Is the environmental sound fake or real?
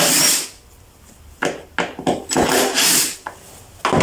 real